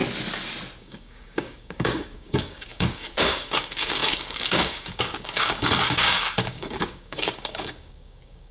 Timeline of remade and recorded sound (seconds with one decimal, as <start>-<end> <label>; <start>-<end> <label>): 0.0-0.8 recorded; 0.8-8.5 remade